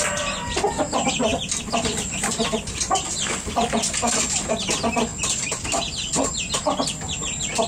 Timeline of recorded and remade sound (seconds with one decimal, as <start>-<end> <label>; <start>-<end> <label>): 0.0-7.7 recorded